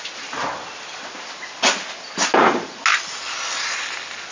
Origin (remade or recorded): recorded